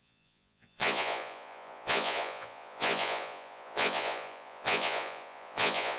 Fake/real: fake